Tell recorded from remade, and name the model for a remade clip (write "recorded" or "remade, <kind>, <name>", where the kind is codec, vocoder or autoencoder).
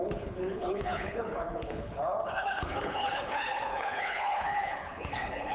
remade, codec, HILCodec